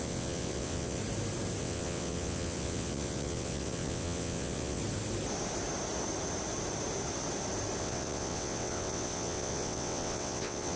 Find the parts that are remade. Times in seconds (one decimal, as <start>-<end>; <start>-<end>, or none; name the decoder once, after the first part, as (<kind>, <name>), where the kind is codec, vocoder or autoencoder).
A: 0.0-1.0 (vocoder, WaveNeXt); 1.6-4.8; 7.8-10.8